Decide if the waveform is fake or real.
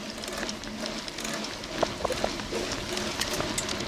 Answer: real